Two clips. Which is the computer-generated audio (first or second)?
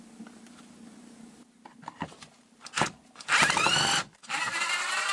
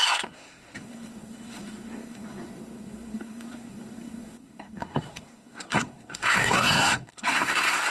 second